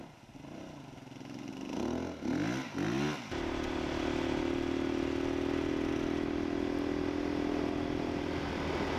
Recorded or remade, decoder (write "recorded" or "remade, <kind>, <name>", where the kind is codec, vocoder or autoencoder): recorded